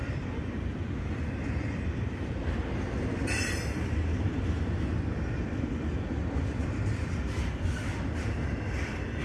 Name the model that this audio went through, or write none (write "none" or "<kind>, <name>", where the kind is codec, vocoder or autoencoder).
vocoder, BigVGAN v2